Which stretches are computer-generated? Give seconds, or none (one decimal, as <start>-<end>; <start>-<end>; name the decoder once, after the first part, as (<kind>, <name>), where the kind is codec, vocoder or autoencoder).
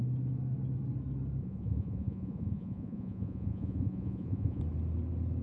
1.4-4.6 (vocoder, Vocos)